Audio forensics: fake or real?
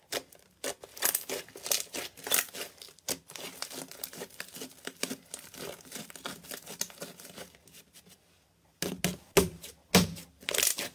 real